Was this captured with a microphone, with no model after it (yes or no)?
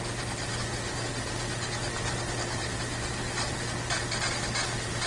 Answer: yes